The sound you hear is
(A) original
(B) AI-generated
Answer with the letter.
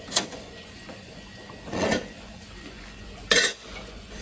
B